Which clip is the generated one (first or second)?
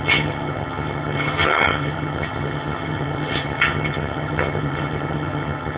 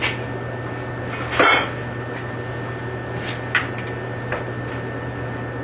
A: first